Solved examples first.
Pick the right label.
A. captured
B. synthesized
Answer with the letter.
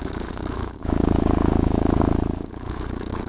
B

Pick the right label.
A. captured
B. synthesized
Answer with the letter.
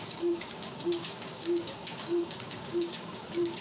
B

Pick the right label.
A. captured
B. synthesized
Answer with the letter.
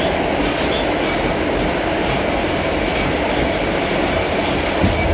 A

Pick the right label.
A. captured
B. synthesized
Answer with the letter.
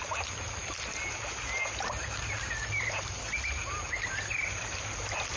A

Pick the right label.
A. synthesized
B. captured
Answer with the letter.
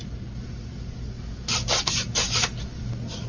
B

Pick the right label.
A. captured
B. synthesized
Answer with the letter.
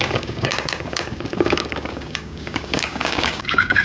B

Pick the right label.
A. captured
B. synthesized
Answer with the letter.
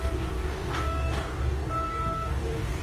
B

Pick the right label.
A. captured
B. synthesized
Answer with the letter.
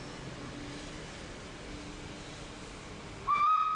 A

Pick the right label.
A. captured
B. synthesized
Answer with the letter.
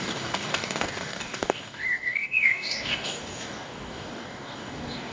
B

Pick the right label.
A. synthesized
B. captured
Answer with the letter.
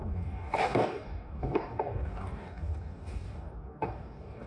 A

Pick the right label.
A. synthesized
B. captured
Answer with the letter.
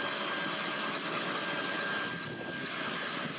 B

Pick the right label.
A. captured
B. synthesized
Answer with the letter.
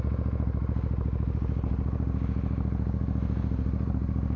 A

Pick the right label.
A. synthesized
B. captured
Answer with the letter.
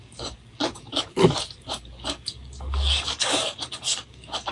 A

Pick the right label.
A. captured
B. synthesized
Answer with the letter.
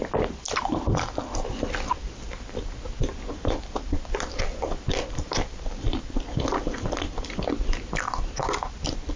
A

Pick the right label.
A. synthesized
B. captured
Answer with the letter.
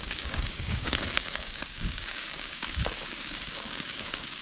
A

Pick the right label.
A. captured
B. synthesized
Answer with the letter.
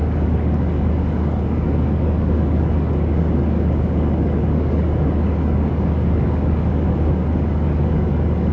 B